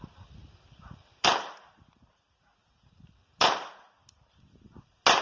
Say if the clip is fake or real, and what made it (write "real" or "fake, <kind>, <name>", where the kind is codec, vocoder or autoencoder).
real